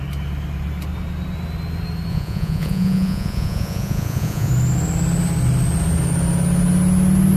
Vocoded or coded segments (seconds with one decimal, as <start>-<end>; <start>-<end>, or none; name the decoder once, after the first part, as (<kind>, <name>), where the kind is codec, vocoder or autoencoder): 2.1-4.5 (vocoder, Vocos)